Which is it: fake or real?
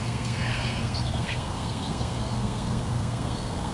fake